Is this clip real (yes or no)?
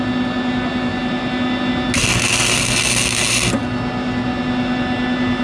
yes